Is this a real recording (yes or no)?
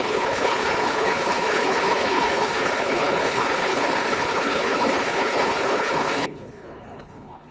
no